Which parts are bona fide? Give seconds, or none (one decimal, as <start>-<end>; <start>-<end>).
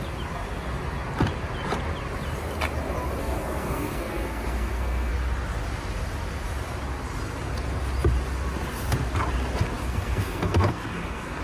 0.0-3.2; 5.1-9.8